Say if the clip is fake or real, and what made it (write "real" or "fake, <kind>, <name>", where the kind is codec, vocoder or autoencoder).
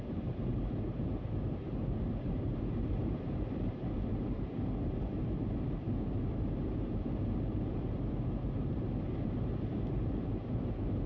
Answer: fake, vocoder, BigVGAN v2